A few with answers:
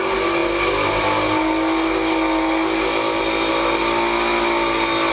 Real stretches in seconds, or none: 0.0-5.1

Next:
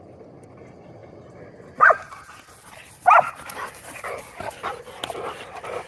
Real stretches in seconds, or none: 0.0-5.9